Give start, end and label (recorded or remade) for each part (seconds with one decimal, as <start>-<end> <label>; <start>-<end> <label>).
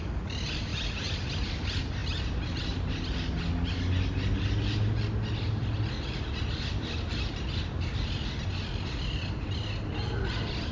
0.0-10.7 recorded